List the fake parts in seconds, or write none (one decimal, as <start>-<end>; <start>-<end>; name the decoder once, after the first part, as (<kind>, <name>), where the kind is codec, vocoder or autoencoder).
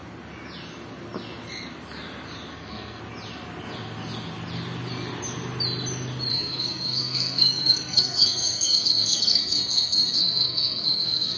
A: 2.5-3.0 (codec, SNAC); 6.3-11.4